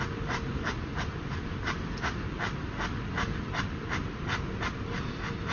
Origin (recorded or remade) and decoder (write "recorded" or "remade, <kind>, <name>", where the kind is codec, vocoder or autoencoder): recorded